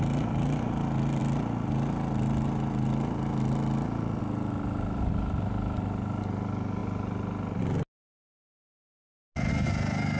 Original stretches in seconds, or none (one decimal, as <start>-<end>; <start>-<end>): 0.0-9.5